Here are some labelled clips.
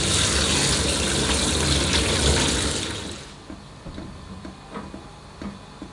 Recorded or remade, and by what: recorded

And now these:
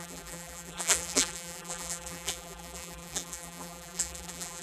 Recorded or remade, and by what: remade, vocoder, BigVGAN v2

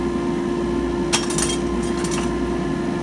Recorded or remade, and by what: recorded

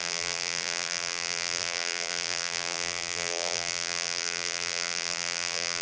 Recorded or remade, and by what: remade, vocoder, BigVGAN v2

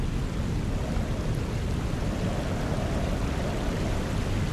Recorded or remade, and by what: recorded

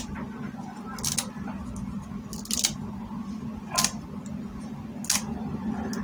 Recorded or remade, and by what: recorded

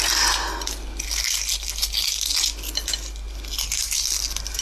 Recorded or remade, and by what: recorded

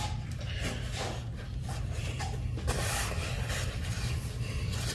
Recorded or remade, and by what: remade, vocoder, BigVGAN v2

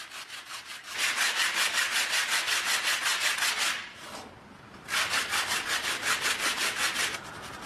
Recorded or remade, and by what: recorded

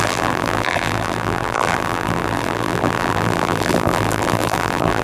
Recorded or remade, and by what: remade, vocoder, BigVGAN v2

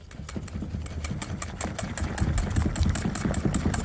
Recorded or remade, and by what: recorded